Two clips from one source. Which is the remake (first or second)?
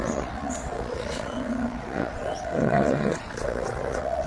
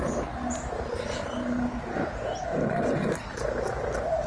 first